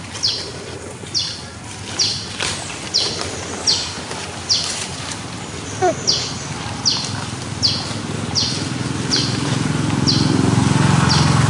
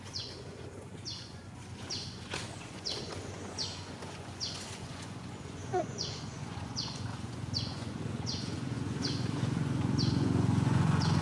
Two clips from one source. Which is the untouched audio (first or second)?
first